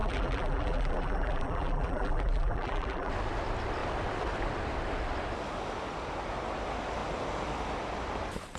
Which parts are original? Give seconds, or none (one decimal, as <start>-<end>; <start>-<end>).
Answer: 3.1-8.6